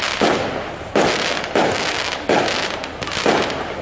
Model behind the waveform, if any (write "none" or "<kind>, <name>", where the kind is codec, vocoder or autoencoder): none